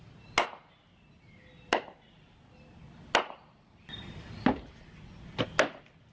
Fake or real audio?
real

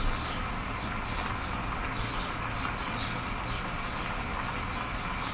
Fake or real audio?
real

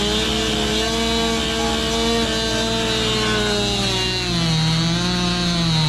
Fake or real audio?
real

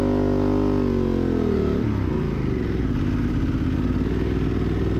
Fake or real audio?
real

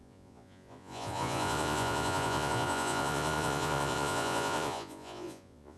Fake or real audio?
fake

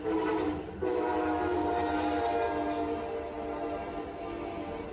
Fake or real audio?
real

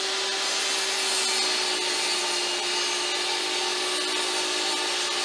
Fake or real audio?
real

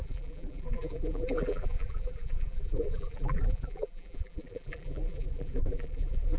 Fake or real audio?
fake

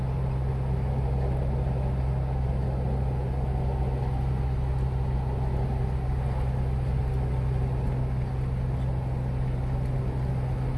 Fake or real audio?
real